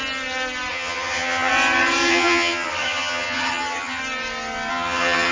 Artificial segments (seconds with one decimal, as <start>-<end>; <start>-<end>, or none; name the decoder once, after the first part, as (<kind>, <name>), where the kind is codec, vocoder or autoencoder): 0.7-1.5 (vocoder, HiFi-GAN); 2.1-4.0; 4.7-5.3